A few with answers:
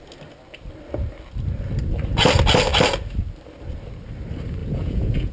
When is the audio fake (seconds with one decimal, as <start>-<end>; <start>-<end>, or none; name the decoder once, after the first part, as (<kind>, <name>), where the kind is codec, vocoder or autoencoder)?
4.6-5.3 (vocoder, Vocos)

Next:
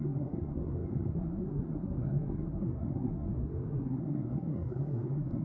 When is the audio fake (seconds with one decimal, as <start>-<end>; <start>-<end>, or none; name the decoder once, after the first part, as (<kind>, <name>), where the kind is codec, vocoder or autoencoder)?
0.0-5.4 (codec, SNAC)

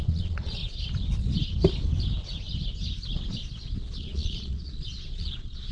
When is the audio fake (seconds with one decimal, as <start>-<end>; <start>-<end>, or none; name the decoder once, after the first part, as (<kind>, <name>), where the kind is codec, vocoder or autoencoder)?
0.0-0.6 (vocoder, Vocos); 4.0-5.7

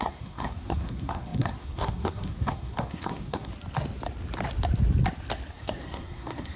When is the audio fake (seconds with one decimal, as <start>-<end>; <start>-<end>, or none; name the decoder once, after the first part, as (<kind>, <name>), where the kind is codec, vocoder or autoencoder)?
0.0-3.5 (codec, SNAC); 5.5-6.6

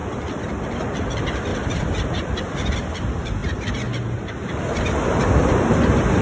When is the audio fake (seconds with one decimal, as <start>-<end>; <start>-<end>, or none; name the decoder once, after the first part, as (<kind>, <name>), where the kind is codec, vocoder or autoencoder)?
1.5-2.5 (vocoder, BigVGAN v2); 3.4-4.6

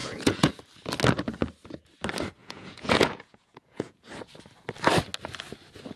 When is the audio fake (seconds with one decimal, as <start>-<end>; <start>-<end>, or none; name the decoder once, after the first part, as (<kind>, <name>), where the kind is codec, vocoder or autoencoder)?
0.0-0.5 (vocoder, Vocos); 2.4-4.1